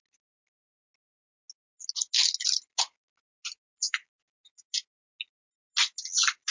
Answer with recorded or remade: recorded